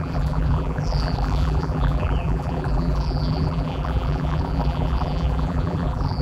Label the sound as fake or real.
fake